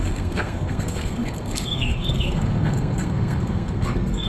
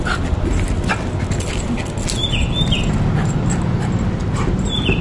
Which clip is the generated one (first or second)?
first